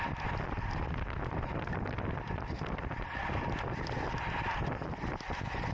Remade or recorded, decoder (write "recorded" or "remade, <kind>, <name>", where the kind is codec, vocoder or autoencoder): recorded